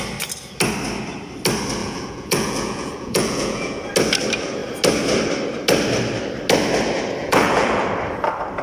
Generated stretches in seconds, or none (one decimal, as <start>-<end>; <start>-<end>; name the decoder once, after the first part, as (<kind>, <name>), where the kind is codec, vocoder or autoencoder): 1.8-3.9 (vocoder, Vocos); 7.2-7.8

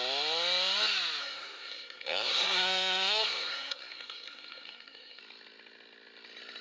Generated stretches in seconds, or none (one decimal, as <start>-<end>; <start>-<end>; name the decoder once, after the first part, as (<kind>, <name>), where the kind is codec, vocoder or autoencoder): 1.2-5.2 (codec, SNAC)

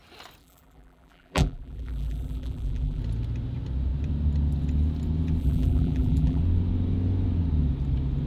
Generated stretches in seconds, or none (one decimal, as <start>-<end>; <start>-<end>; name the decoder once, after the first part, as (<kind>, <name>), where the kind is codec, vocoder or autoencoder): 0.4-3.0 (vocoder, BigVGAN v2); 5.4-6.4

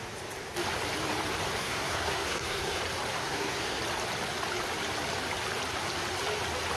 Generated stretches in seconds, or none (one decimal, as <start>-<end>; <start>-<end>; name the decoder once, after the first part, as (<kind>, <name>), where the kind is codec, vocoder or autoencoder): 1.6-2.8 (codec, SNAC); 3.2-3.8

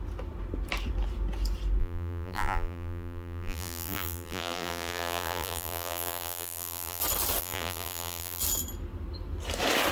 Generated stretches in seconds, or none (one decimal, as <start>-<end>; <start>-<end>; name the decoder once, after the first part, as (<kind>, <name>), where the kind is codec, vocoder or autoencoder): 1.8-7.0 (vocoder, BigVGAN v2); 7.4-8.4